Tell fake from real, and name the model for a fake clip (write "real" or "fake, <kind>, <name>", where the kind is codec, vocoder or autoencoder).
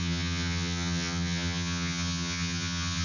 fake, vocoder, HiFi-GAN